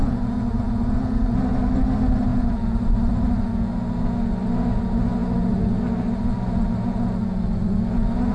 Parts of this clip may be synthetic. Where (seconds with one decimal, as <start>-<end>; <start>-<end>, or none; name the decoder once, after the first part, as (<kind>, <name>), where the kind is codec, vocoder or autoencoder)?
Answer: none